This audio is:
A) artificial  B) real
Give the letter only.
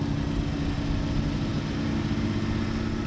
B